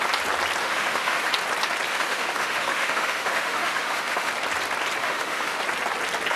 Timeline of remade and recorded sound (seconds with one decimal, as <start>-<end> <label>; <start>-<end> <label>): 0.0-0.6 recorded; 0.6-1.3 remade; 1.3-1.9 recorded; 1.9-4.3 remade; 4.3-5.0 recorded; 5.0-5.6 remade; 5.6-6.4 recorded